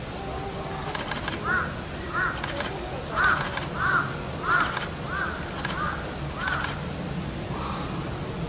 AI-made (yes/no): no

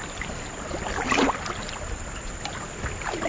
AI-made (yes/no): no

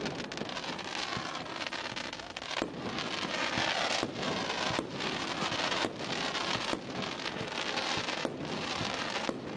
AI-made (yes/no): no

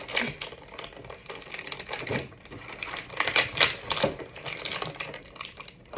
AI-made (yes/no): no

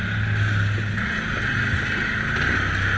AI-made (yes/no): no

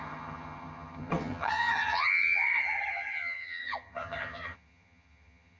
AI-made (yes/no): yes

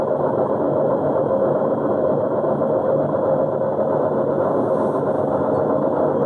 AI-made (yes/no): no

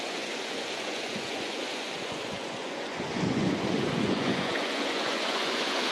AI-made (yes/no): yes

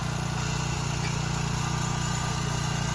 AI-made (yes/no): no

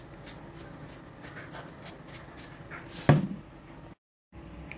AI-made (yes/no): no